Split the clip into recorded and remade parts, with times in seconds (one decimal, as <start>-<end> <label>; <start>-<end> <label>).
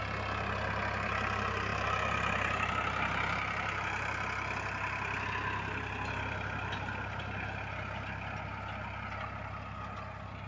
0.0-10.5 recorded